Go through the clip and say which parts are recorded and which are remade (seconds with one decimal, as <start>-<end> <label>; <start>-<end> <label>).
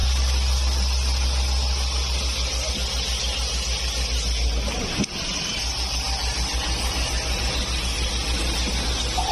0.0-5.3 recorded; 5.3-7.5 remade; 7.5-9.3 recorded